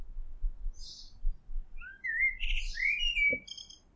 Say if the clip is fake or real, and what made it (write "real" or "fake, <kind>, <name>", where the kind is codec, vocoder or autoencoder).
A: real